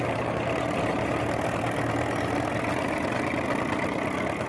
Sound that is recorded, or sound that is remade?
recorded